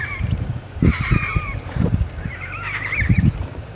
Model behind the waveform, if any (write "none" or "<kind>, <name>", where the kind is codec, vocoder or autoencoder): vocoder, BigVGAN v2